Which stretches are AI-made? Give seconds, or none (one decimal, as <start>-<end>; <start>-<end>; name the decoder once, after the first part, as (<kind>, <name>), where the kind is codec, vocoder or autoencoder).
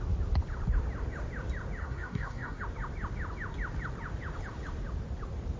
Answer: 1.8-2.6 (codec, SNAC)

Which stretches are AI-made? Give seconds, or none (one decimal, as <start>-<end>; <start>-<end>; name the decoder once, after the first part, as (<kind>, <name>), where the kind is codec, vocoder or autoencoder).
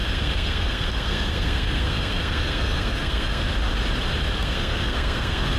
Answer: 0.0-3.4 (codec, SNAC); 4.4-5.6